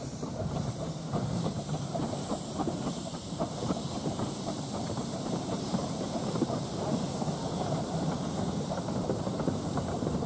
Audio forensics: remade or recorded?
remade